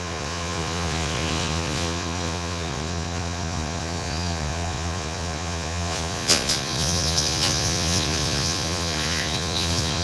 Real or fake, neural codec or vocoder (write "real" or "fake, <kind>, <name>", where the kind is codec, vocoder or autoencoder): fake, vocoder, Vocos